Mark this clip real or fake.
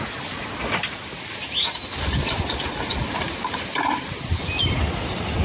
real